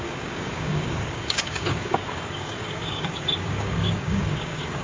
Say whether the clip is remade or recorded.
remade